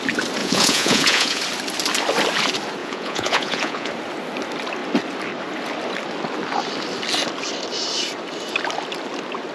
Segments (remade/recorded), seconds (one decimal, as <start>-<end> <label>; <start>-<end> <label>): 0.0-0.4 recorded; 0.4-1.4 remade; 1.4-2.8 recorded; 2.8-3.9 remade; 3.9-9.5 recorded